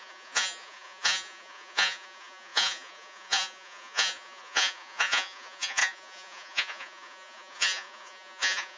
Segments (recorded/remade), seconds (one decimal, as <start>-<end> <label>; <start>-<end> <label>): 0.0-8.8 remade